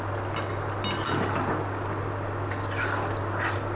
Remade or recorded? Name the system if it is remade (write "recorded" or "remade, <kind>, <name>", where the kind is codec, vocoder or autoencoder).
recorded